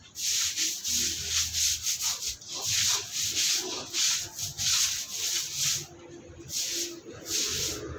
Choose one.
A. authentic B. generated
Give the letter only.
A